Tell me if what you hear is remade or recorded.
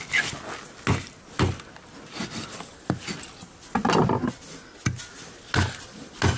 recorded